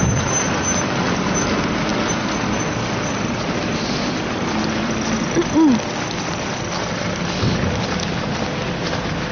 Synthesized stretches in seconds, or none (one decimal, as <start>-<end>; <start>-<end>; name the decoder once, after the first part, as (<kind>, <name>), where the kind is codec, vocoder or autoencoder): none